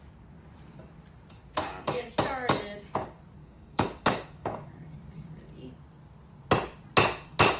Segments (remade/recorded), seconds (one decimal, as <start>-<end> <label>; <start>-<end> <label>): 0.0-1.6 recorded; 1.6-2.1 remade; 2.1-3.4 recorded; 3.4-4.7 remade; 4.7-7.6 recorded